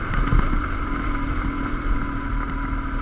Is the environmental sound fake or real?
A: real